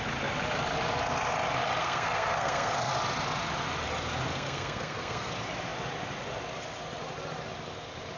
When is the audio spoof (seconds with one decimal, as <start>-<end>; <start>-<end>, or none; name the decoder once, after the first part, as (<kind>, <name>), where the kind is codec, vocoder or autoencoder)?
1.8-2.9 (codec, SNAC); 4.3-5.3